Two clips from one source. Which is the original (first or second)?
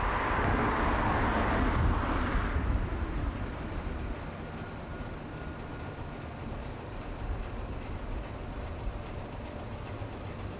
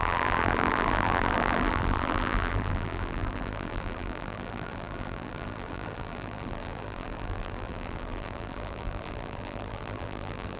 first